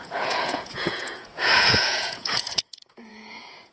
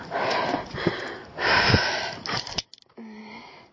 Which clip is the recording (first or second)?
second